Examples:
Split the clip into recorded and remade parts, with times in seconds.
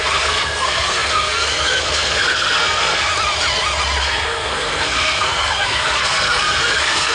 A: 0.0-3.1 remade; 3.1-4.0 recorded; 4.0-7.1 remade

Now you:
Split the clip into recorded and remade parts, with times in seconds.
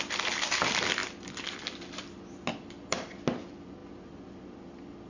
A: 0.0-5.1 recorded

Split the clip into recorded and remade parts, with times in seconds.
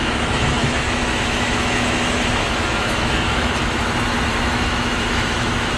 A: 0.0-3.5 remade; 3.5-4.3 recorded; 4.3-5.8 remade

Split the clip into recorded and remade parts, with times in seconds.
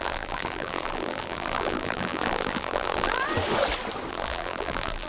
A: 0.0-3.2 remade; 3.2-4.1 recorded; 4.1-5.1 remade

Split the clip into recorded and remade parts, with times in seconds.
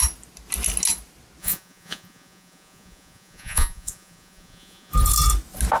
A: 0.0-1.4 recorded; 1.4-4.9 remade; 4.9-5.8 recorded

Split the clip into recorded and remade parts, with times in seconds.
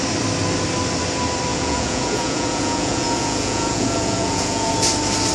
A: 0.0-1.5 recorded; 1.5-4.7 remade; 4.7-5.3 recorded